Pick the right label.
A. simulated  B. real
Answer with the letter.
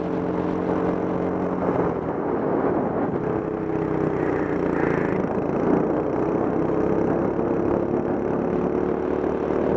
B